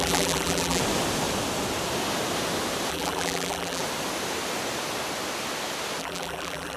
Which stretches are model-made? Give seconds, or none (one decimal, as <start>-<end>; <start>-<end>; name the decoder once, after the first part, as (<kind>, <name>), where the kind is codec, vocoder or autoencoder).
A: 0.0-0.8 (vocoder, BigVGAN v2); 2.9-3.8; 6.0-6.8